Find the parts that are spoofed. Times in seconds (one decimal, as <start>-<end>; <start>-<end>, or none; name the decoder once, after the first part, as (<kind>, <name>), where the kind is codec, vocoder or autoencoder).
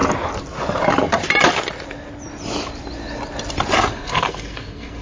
3.9-5.0 (codec, SNAC)